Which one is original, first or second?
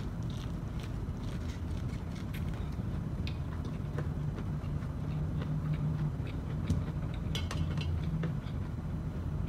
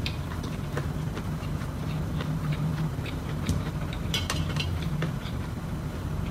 first